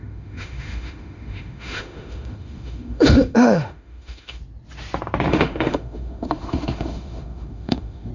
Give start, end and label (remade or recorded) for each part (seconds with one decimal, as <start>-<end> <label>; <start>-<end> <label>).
0.0-4.4 remade; 4.4-5.3 recorded; 5.3-8.1 remade